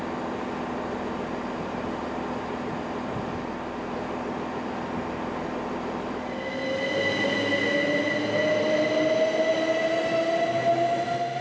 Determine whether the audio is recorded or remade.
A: recorded